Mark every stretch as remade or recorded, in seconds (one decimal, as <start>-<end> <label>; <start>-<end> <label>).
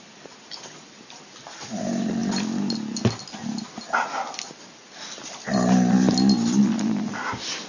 0.0-7.7 recorded